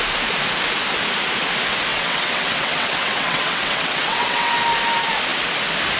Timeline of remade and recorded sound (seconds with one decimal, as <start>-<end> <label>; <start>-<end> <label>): 0.0-1.9 recorded; 1.9-4.6 remade; 4.6-6.0 recorded